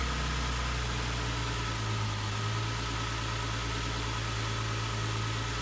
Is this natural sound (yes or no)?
yes